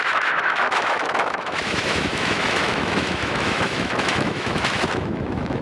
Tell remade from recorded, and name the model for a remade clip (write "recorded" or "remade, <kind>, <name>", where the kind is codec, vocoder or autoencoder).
remade, autoencoder, DAC-VAE